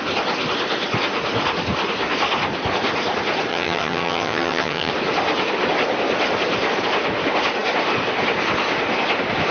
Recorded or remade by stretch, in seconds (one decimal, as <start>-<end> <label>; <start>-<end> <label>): 0.0-3.5 recorded; 3.5-4.9 remade; 4.9-9.5 recorded